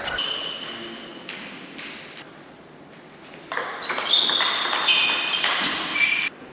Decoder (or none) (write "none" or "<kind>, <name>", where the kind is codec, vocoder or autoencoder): none